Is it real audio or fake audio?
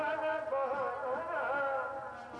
real